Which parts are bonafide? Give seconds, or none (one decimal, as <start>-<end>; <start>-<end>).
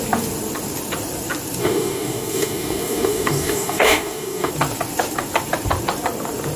0.0-1.6; 4.5-6.6